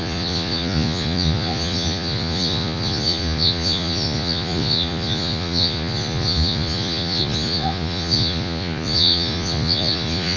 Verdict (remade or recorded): remade